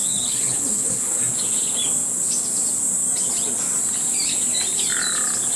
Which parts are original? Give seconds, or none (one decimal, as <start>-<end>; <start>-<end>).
1.2-5.6